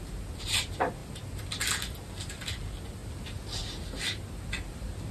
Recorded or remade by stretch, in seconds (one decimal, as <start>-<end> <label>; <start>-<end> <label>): 0.0-5.1 recorded